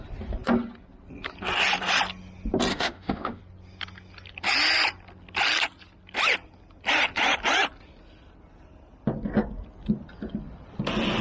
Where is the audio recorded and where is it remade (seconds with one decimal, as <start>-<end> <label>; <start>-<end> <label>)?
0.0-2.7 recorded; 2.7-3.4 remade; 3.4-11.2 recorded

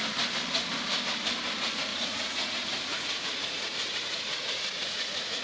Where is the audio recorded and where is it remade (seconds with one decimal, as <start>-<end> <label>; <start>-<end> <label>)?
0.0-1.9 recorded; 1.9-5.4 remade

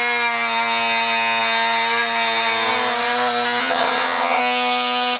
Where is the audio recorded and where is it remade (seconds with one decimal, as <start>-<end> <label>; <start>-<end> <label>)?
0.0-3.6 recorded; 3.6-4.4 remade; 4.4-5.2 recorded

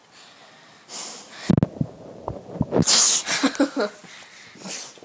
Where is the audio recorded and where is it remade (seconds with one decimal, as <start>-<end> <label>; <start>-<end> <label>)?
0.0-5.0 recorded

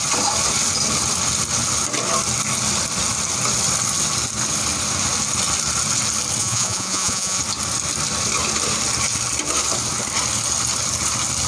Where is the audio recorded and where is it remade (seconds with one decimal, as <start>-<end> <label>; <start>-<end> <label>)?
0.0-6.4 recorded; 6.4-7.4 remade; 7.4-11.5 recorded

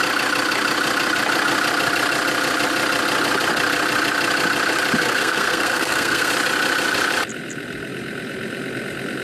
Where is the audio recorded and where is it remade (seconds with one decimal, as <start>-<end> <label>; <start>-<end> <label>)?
0.0-5.0 recorded; 5.0-6.3 remade; 6.3-9.2 recorded